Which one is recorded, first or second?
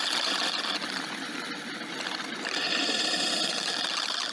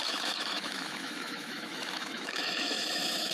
first